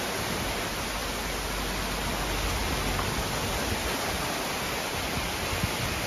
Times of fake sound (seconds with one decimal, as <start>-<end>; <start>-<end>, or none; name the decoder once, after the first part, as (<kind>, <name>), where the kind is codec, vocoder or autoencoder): none